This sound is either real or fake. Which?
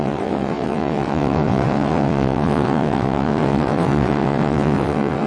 fake